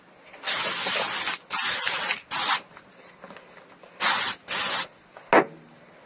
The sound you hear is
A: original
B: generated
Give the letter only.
A